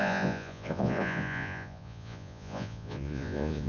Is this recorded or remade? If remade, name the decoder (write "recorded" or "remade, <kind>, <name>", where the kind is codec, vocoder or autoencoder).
remade, vocoder, Vocos